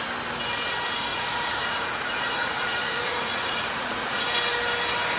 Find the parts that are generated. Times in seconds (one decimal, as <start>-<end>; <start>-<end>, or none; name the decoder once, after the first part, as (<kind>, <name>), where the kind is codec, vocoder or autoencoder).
1.1-4.2 (vocoder, Vocos)

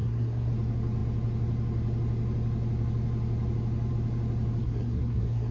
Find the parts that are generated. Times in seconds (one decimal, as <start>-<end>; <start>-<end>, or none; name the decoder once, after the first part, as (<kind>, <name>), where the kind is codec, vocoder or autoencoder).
0.0-0.5 (codec, SNAC); 4.6-5.5

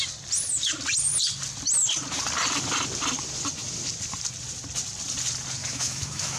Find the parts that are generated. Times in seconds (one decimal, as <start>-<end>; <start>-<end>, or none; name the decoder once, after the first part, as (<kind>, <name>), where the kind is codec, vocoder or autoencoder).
5.6-6.4 (autoencoder, DAC-VAE)

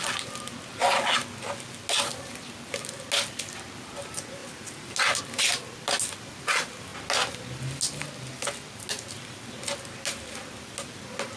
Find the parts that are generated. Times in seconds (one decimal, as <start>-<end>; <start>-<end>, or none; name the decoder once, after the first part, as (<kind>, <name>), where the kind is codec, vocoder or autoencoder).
none

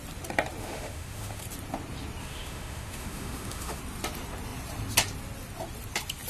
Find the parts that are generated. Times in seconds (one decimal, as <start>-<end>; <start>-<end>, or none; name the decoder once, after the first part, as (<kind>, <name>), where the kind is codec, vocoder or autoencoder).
0.6-1.4 (autoencoder, DAC-VAE); 2.2-3.8

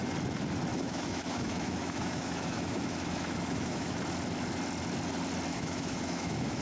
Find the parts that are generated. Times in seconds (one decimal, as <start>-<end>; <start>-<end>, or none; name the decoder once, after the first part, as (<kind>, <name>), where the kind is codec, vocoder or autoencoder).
0.7-4.0 (autoencoder, DAC-VAE); 5.5-6.6

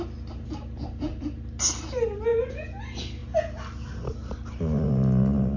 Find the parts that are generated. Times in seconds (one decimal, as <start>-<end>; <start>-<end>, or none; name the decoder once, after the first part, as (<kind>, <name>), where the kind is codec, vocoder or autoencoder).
2.3-2.8 (vocoder, Vocos)